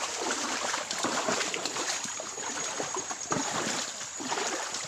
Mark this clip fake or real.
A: real